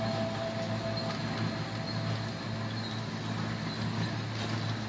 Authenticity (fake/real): real